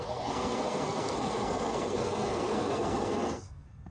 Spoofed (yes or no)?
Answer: yes